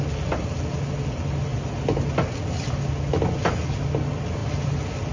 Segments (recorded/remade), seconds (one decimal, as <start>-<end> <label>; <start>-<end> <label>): 0.0-5.1 recorded